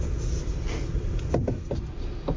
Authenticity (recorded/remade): recorded